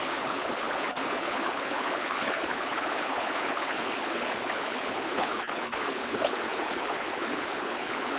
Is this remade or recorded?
remade